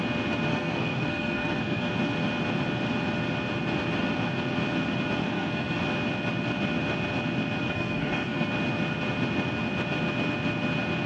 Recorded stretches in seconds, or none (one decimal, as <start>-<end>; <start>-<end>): 0.0-0.5; 1.9-5.2; 5.8-7.6; 8.5-11.1